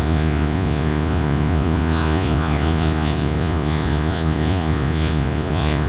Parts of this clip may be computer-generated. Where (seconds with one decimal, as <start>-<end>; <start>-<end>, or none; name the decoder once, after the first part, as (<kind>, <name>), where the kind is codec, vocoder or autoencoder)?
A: 0.0-5.9 (vocoder, Vocos)